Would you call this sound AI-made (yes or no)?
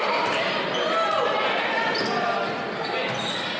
no